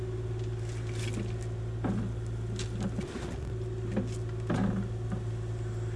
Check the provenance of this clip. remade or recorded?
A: recorded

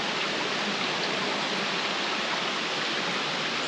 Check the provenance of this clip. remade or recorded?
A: recorded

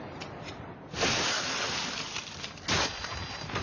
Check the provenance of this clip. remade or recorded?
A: recorded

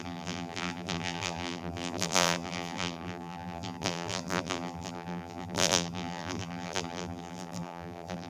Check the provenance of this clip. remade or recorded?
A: remade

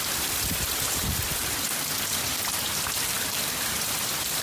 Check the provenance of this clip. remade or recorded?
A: remade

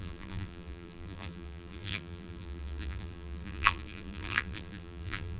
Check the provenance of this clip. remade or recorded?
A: remade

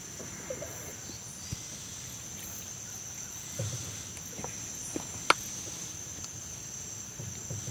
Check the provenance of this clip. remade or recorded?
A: recorded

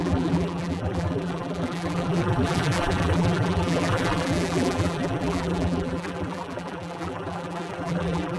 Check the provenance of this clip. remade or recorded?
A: remade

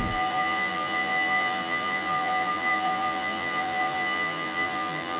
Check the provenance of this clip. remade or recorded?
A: remade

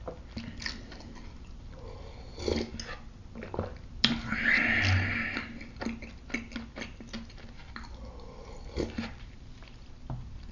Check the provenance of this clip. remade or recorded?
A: recorded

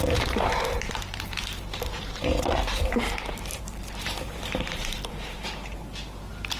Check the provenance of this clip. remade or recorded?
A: remade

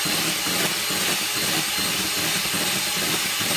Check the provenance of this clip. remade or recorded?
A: remade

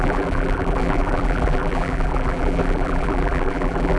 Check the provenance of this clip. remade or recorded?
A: remade